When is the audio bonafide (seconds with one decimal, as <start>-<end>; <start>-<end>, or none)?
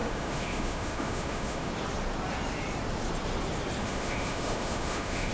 1.7-3.8